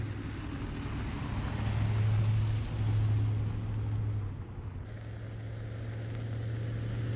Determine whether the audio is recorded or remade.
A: recorded